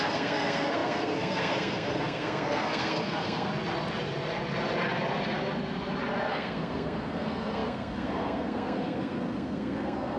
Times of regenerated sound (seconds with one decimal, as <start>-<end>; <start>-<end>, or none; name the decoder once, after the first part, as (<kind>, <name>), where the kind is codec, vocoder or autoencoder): 0.0-3.5 (codec, SNAC); 6.3-10.2